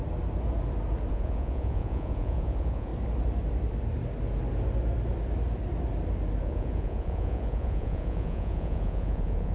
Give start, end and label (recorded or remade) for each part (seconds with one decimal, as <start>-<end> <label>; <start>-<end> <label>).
0.0-1.1 recorded; 1.1-2.9 remade; 2.9-6.4 recorded; 6.4-9.5 remade